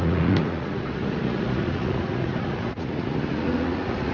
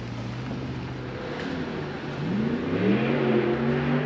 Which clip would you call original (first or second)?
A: second